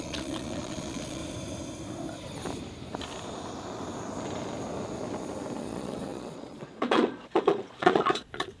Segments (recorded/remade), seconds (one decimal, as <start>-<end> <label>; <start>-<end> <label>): 0.0-1.2 remade; 1.2-5.6 recorded; 5.6-8.6 remade